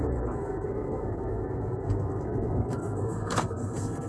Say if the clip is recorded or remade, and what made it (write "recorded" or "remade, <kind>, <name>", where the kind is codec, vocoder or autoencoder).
remade, codec, SNAC